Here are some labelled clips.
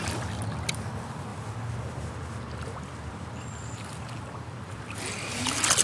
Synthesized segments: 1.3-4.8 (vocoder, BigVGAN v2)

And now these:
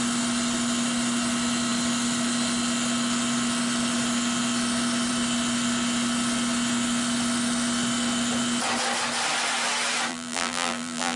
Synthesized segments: 10.1-11.2 (vocoder, BigVGAN v2)

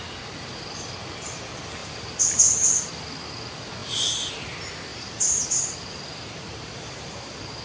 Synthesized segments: 4.9-7.6 (vocoder, BigVGAN v2)

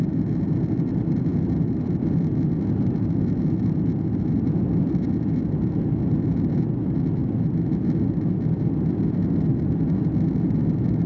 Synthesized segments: 9.5-10.1 (vocoder, BigVGAN v2)